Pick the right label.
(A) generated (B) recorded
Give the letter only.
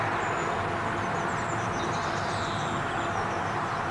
B